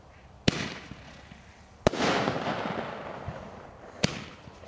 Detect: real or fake real